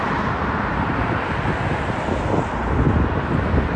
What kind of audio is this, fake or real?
real